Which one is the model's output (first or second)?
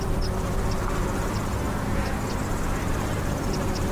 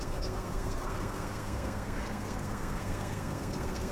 second